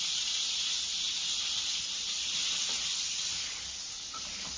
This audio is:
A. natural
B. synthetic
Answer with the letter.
A